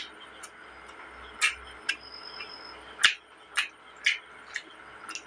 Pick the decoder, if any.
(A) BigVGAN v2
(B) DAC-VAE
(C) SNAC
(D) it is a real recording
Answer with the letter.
D